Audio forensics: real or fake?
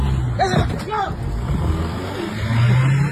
real